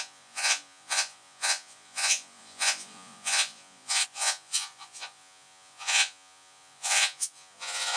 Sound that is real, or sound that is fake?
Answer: fake